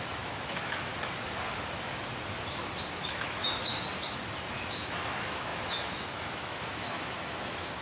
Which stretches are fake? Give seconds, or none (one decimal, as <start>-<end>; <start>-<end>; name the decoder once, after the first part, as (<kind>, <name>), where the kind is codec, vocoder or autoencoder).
0.0-0.9 (autoencoder, DAC-VAE); 3.1-3.7; 4.5-7.8

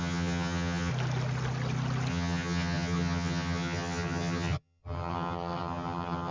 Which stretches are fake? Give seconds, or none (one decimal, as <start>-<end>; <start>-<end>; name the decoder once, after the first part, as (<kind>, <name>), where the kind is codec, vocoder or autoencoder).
0.0-0.9 (vocoder, HiFi-GAN); 2.1-6.3